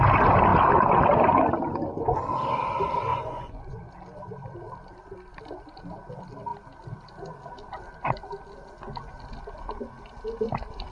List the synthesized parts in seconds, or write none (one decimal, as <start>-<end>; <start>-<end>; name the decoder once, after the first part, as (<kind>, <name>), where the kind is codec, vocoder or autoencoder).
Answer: 3.1-3.9 (vocoder, Vocos)